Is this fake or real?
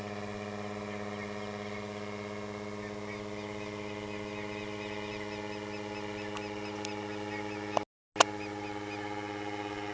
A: real